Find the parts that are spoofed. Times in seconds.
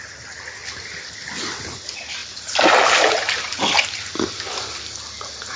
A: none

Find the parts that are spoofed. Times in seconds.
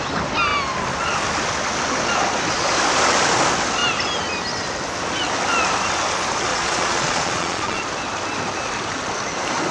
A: 6.5-7.8